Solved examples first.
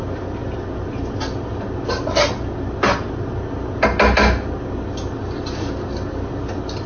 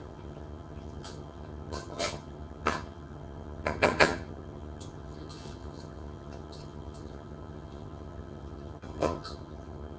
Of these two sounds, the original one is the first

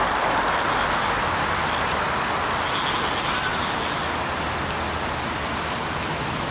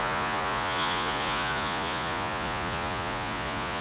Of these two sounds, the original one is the first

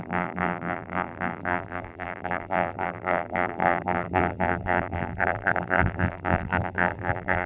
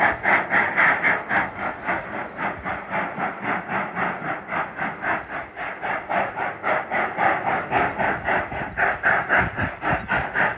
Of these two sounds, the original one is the second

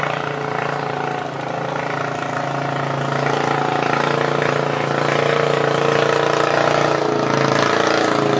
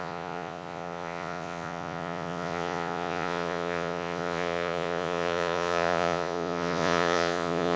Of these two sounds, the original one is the first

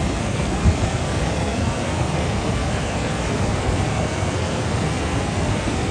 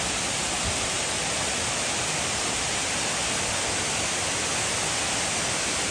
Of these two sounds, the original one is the second